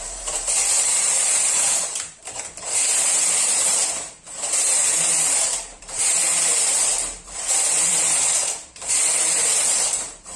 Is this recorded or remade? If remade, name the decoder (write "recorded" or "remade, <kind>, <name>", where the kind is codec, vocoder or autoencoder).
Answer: remade, vocoder, BigVGAN v2